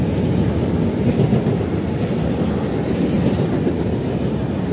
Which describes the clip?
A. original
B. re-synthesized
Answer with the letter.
A